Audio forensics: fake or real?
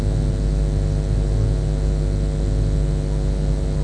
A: real